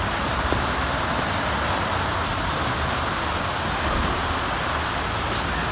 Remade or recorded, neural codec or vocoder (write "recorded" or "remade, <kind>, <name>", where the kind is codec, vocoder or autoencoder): recorded